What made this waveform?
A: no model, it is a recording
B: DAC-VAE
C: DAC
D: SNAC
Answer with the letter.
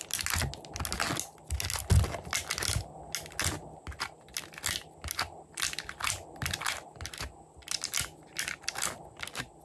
A